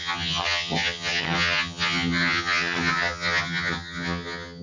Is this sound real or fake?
fake